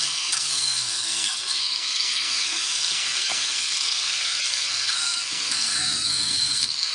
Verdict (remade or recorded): remade